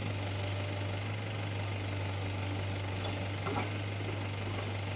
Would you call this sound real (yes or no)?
yes